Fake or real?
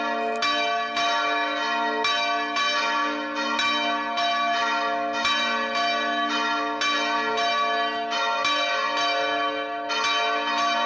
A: real